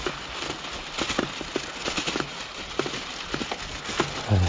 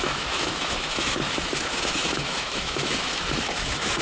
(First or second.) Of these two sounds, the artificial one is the second